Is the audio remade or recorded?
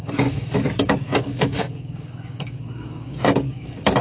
remade